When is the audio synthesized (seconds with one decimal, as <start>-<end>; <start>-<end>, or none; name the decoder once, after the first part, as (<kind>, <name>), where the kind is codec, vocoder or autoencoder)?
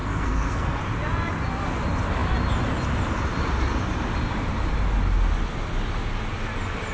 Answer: 0.0-0.8 (codec, SNAC)